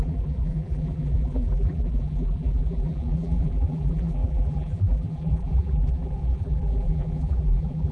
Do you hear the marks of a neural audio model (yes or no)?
yes